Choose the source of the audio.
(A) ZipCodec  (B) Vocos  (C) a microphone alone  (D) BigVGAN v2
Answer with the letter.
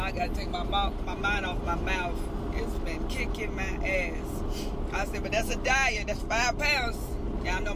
C